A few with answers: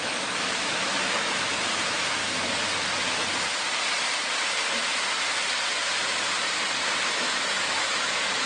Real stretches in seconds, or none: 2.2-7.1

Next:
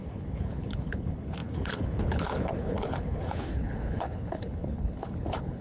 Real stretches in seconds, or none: none

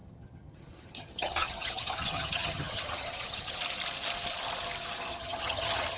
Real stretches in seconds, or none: 3.6-5.1